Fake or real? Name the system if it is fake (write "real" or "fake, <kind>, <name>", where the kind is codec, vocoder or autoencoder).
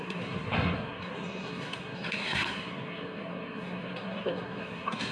fake, codec, SNAC